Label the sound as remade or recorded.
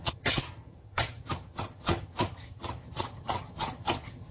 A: remade